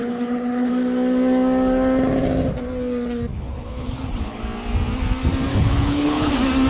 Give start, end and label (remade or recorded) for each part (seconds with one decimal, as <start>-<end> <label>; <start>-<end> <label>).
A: 0.0-0.7 remade; 0.7-3.3 recorded; 3.3-4.4 remade; 4.4-5.5 recorded; 5.5-6.3 remade; 6.3-6.7 recorded